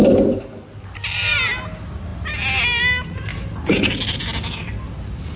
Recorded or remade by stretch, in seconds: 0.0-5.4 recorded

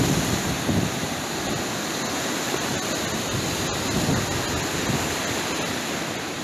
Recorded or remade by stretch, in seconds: 0.0-6.4 recorded

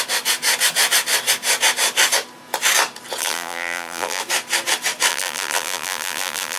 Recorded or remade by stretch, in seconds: 0.0-3.2 recorded; 3.2-4.2 remade; 4.2-5.1 recorded; 5.1-6.6 remade

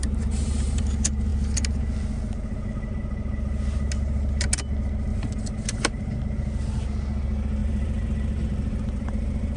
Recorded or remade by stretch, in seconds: 0.0-0.8 remade; 0.8-5.1 recorded; 5.1-6.1 remade; 6.1-7.6 recorded; 7.6-9.6 remade

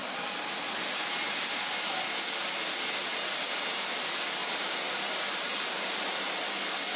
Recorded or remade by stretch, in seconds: 0.0-4.4 recorded; 4.4-4.9 remade; 4.9-5.5 recorded; 5.5-6.4 remade; 6.4-7.0 recorded

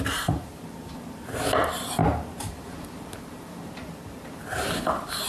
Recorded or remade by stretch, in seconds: 0.0-5.3 remade

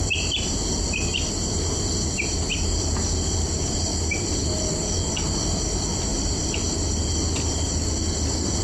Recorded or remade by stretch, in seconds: 0.0-6.1 recorded; 6.1-7.8 remade; 7.8-8.6 recorded

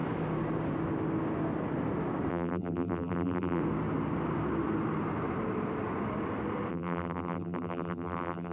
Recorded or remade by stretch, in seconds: 0.0-2.3 recorded; 2.3-3.6 remade; 3.6-6.7 recorded; 6.7-8.5 remade